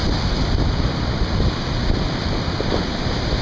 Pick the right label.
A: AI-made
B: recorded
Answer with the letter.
B